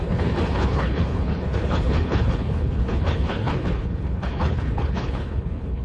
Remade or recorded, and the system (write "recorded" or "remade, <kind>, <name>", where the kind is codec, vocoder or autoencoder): remade, codec, HILCodec